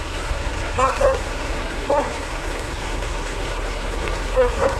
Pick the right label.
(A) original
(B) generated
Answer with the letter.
B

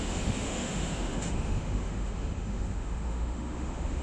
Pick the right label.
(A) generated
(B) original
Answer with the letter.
A